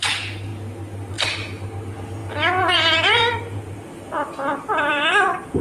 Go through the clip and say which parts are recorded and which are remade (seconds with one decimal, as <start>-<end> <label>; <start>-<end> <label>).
0.0-2.2 recorded; 2.2-5.6 remade